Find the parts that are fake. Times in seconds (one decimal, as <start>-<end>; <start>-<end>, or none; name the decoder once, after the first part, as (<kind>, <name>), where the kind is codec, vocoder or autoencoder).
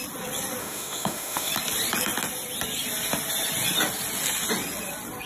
0.6-1.5 (autoencoder, DAC-VAE)